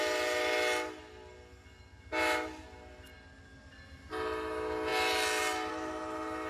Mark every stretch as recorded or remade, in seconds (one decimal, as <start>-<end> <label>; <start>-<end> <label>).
0.0-6.5 recorded